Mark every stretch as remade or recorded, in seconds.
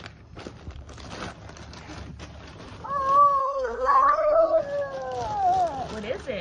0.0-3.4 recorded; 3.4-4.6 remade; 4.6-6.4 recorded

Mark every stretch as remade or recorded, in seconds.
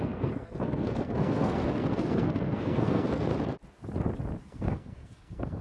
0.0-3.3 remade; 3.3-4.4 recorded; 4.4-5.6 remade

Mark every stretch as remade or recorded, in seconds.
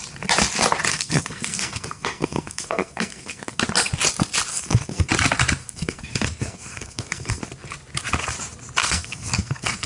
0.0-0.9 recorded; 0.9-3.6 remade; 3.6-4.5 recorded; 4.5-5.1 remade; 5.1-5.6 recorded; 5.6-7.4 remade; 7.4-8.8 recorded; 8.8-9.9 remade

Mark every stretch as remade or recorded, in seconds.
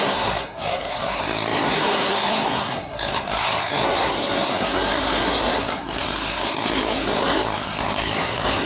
0.0-8.7 remade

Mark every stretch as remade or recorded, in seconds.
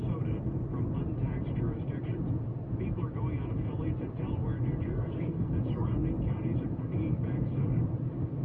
0.0-4.9 recorded; 4.9-5.5 remade; 5.5-8.4 recorded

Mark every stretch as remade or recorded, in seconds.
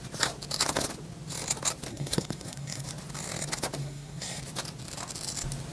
0.0-1.9 recorded; 1.9-2.9 remade; 2.9-3.8 recorded; 3.8-4.4 remade; 4.4-5.7 recorded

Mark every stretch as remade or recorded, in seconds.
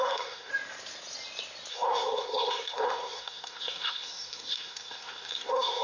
0.0-0.5 remade; 0.5-1.7 recorded; 1.7-5.8 remade